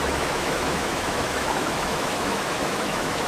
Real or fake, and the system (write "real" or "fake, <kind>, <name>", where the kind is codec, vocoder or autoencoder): fake, autoencoder, DAC-VAE